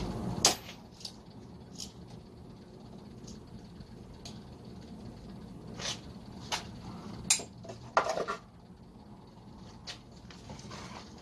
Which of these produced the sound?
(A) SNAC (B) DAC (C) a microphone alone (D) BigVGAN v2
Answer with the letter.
C